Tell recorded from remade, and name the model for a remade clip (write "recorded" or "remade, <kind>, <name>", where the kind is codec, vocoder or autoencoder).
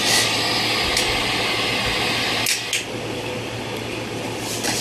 recorded